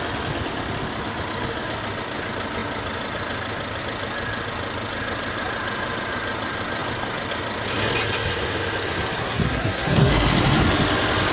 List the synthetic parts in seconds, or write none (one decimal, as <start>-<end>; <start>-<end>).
9.2-10.1